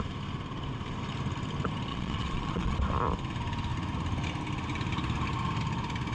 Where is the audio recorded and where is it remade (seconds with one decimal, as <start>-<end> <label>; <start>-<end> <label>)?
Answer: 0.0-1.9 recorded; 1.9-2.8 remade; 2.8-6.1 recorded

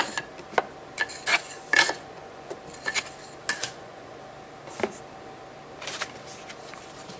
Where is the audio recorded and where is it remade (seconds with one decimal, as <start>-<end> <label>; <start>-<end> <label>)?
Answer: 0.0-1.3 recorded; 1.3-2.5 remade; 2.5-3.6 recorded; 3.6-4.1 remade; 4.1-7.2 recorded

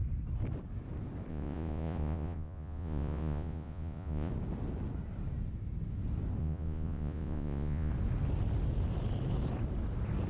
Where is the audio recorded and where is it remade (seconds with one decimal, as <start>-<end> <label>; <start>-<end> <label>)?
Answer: 0.0-1.3 recorded; 1.3-4.3 remade; 4.3-6.4 recorded; 6.4-7.9 remade; 7.9-10.3 recorded

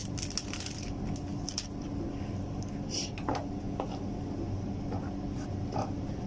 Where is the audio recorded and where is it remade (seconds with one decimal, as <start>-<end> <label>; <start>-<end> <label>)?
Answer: 0.0-6.3 recorded